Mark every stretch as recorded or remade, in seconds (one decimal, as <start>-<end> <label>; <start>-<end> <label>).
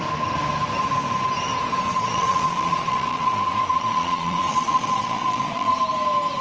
0.0-1.9 recorded; 1.9-5.7 remade; 5.7-6.4 recorded